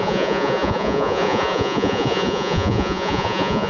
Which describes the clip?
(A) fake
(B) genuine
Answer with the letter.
A